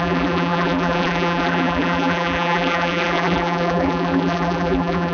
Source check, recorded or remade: remade